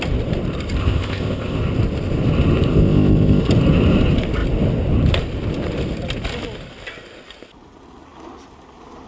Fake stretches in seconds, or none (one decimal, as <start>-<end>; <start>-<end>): 0.8-1.6; 2.7-3.5